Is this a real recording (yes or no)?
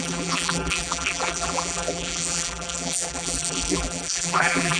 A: no